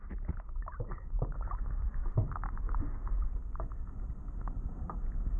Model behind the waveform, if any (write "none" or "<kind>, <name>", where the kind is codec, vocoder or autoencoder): none